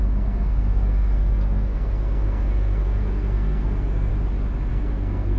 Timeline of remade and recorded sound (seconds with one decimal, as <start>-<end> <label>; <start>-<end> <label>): 0.0-4.1 remade; 4.1-4.7 recorded; 4.7-5.4 remade